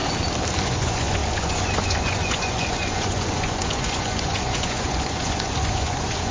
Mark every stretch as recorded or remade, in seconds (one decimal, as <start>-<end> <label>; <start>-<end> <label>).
0.0-0.6 recorded; 0.6-6.3 remade